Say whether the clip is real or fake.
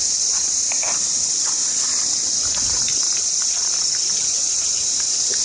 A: real